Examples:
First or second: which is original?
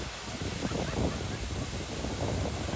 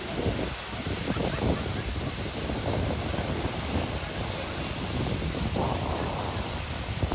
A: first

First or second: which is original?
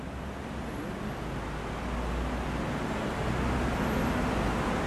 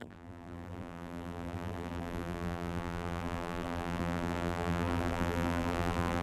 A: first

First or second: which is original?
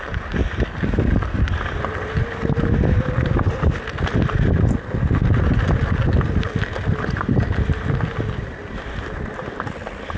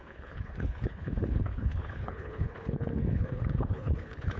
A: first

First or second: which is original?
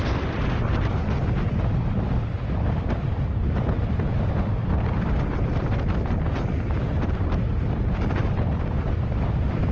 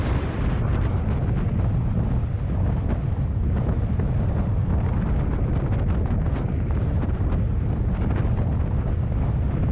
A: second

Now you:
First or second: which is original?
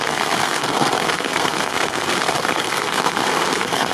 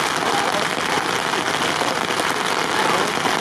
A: second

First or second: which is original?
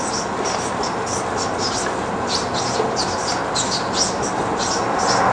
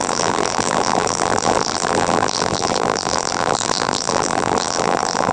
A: first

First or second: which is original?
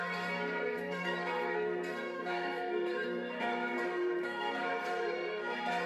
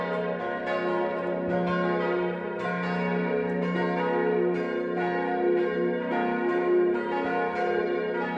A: second